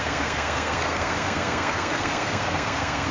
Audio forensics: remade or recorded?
remade